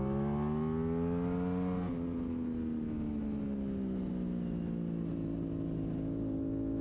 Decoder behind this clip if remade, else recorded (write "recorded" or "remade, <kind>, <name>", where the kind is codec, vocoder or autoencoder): recorded